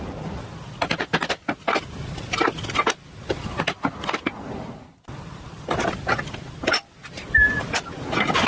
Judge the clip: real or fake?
real